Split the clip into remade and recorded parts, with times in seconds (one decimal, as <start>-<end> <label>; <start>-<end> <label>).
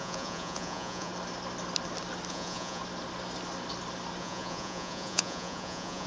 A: 0.0-1.1 remade; 1.1-2.3 recorded; 2.3-2.8 remade; 2.8-4.2 recorded; 4.2-6.1 remade